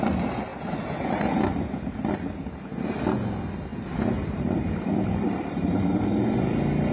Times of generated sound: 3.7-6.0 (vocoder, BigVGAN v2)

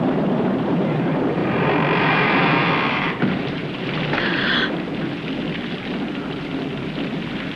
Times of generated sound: 0.0-1.4 (vocoder, BigVGAN v2); 2.9-3.6